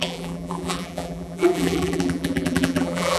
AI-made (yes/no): yes